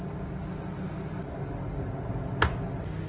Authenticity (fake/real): real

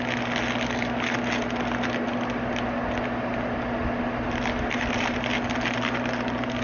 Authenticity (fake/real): real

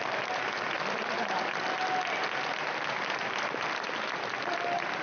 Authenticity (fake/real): real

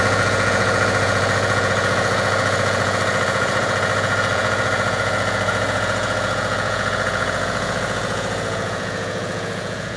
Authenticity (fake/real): fake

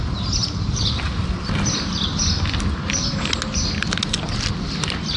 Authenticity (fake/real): real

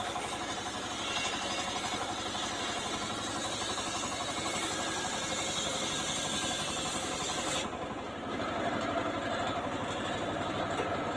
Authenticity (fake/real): real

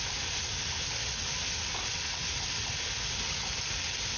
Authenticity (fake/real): real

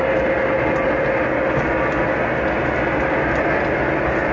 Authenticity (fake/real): real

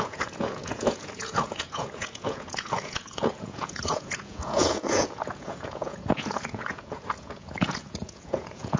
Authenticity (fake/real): fake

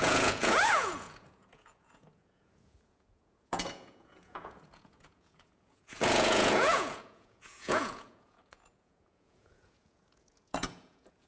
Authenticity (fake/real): fake